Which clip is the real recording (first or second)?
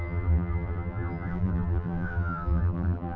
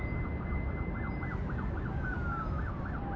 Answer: second